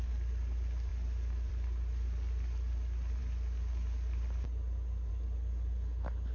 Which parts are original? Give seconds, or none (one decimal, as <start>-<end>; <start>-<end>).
0.0-6.3